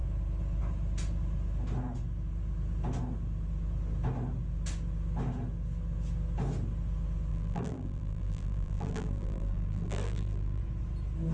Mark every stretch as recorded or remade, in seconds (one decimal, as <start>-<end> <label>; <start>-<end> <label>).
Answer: 0.0-7.3 recorded; 7.3-10.6 remade; 10.6-11.3 recorded